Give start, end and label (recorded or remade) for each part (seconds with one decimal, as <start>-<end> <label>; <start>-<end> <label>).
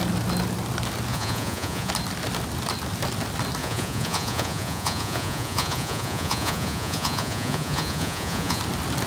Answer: 0.0-1.1 recorded; 1.1-1.9 remade; 1.9-3.6 recorded; 3.6-8.6 remade; 8.6-9.1 recorded